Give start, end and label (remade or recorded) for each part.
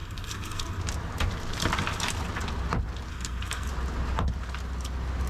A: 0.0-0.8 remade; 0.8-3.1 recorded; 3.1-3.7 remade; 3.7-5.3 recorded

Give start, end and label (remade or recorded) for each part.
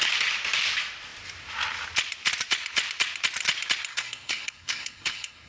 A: 0.0-3.9 recorded; 3.9-5.5 remade